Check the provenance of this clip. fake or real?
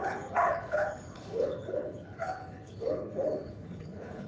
fake